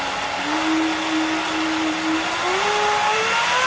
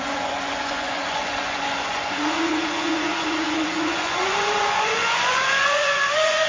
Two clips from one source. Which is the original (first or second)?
first